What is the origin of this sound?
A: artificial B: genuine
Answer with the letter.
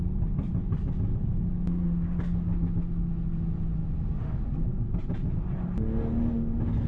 B